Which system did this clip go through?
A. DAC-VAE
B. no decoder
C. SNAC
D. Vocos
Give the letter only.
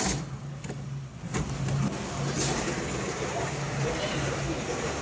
B